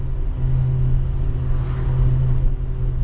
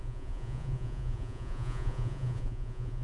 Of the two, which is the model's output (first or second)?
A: second